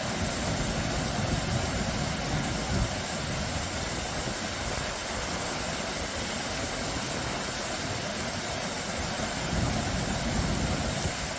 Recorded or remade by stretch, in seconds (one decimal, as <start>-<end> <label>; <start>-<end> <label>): 0.0-11.4 recorded